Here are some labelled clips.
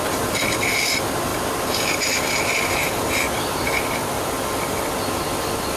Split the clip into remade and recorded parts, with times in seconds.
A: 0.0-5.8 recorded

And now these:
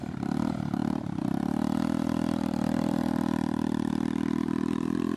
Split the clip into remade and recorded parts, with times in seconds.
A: 0.0-5.2 recorded

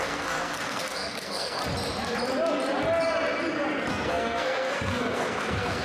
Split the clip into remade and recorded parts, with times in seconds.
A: 0.0-1.6 remade; 1.6-3.9 recorded; 3.9-5.8 remade

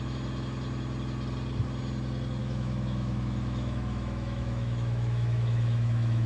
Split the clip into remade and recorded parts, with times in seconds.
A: 0.0-2.4 recorded; 2.4-6.3 remade

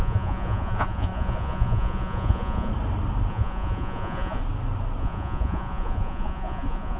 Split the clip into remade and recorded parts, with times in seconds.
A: 0.0-2.7 remade; 2.7-3.3 recorded; 3.3-4.4 remade; 4.4-5.0 recorded; 5.0-7.0 remade